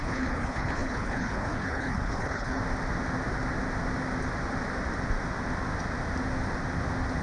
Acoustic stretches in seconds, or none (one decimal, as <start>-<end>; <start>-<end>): 2.6-7.2